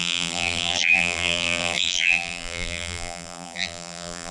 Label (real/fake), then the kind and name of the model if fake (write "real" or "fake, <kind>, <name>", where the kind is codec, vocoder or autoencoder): fake, vocoder, BigVGAN v2